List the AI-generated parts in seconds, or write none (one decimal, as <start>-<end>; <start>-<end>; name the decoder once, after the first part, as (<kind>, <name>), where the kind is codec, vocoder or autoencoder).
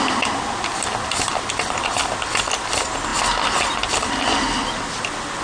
none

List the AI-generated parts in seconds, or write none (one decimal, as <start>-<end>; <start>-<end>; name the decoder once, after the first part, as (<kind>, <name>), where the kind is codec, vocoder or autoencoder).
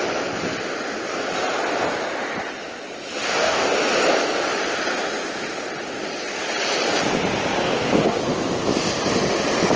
3.2-3.7 (codec, DAC); 7.6-8.2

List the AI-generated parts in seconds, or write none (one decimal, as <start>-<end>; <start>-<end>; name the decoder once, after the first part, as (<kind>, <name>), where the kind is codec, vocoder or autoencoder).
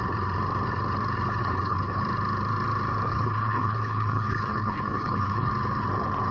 1.4-2.0 (codec, HILCodec); 3.1-5.5